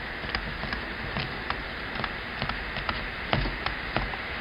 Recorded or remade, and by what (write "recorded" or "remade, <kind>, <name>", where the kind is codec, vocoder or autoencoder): recorded